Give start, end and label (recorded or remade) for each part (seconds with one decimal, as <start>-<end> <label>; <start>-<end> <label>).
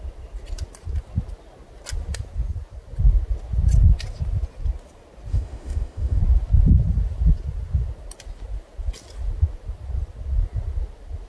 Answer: 0.0-5.3 recorded; 5.3-6.2 remade; 6.2-11.3 recorded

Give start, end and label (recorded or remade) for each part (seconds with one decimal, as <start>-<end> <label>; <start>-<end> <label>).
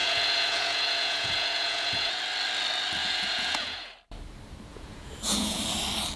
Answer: 0.0-2.2 remade; 2.2-3.0 recorded; 3.0-3.9 remade; 3.9-4.7 recorded; 4.7-5.6 remade; 5.6-6.2 recorded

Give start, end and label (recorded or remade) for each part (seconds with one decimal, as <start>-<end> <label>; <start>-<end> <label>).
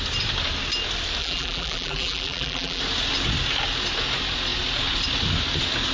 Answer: 0.0-1.2 recorded; 1.2-2.8 remade; 2.8-5.9 recorded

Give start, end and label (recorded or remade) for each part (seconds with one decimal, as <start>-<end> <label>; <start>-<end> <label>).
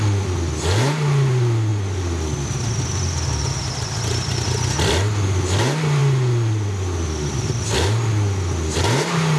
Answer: 0.0-9.4 recorded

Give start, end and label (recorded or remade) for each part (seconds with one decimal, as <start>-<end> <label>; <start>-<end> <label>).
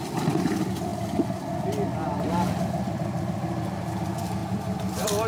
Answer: 0.0-0.9 remade; 0.9-2.8 recorded; 2.8-5.3 remade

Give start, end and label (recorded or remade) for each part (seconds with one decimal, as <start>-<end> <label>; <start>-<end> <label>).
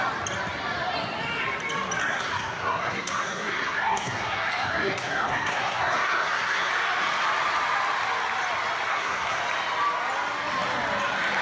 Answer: 0.0-2.0 recorded; 2.0-6.7 remade; 6.7-8.9 recorded; 8.9-9.4 remade; 9.4-11.4 recorded